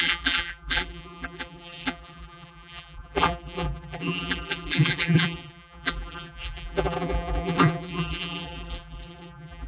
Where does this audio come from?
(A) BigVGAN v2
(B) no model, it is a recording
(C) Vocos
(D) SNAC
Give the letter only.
A